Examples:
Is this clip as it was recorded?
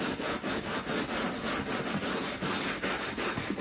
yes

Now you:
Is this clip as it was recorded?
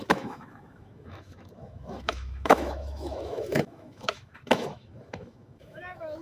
no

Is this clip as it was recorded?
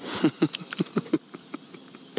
yes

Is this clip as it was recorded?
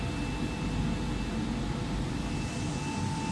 yes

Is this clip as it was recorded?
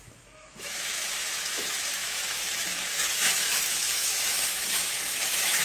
no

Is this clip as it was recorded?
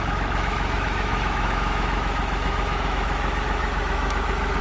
no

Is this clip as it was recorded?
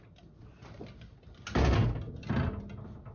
yes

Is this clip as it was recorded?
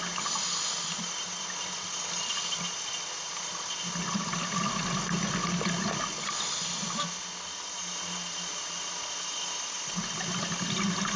yes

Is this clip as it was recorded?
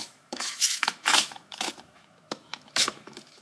no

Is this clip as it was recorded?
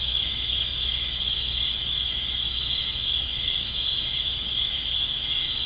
no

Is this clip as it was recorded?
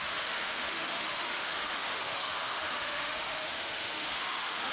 no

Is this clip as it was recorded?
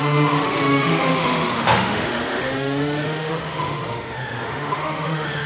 no